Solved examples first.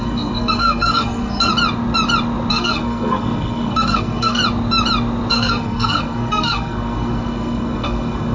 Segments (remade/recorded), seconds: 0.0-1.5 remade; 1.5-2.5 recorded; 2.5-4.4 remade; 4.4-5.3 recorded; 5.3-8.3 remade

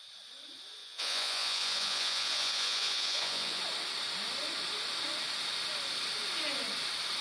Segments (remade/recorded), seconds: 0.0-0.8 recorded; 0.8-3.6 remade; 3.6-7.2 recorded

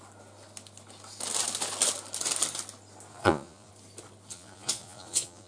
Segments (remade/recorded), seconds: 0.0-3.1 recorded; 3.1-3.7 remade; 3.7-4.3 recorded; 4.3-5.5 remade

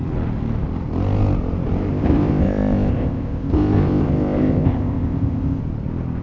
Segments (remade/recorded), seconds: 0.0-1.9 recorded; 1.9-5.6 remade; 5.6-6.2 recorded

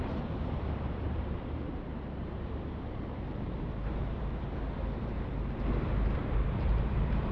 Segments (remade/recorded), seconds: 0.0-4.4 remade; 4.4-6.2 recorded; 6.2-7.3 remade

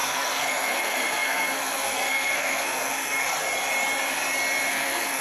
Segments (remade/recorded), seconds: 0.0-3.3 remade; 3.3-4.7 recorded; 4.7-5.2 remade

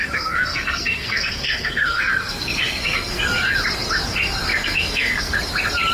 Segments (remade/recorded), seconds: 0.0-3.5 remade; 3.5-4.5 recorded; 4.5-5.4 remade; 5.4-5.9 recorded

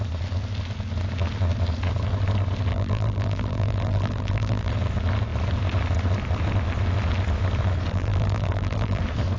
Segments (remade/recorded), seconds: 0.0-2.7 recorded; 2.7-4.7 remade; 4.7-7.9 recorded; 7.9-9.0 remade; 9.0-9.4 recorded